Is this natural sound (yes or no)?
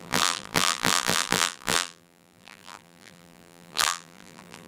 no